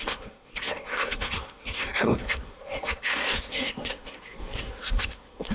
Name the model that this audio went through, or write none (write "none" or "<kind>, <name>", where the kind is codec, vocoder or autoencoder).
codec, SNAC